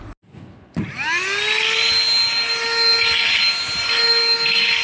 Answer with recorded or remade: recorded